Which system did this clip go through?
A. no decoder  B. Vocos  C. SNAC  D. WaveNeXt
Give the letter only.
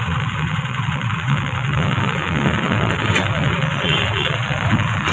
D